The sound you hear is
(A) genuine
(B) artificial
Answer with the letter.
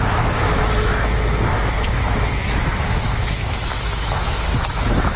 B